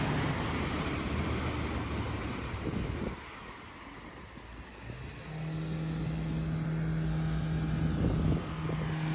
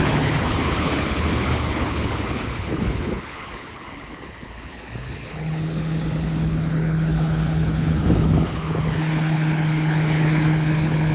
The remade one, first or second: second